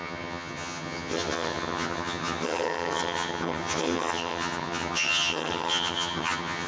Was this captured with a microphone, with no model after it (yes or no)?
no